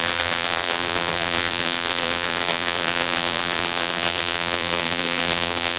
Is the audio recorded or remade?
remade